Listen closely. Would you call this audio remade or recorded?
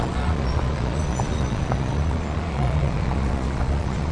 remade